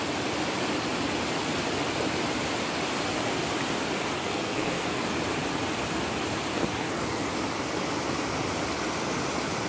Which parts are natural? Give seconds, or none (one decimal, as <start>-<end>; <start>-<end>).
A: 0.0-4.2; 5.0-9.7